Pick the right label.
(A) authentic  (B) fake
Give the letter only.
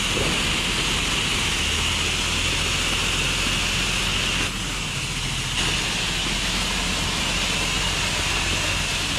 A